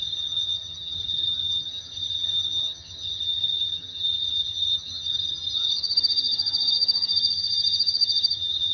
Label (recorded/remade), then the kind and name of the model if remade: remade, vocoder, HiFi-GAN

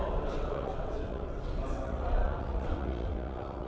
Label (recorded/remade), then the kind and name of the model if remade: remade, vocoder, WaveNeXt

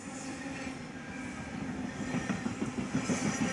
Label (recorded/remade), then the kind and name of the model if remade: recorded